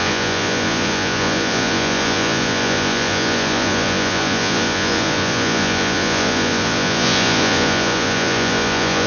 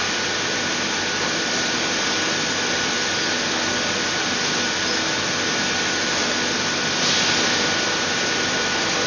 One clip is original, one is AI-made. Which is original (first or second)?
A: second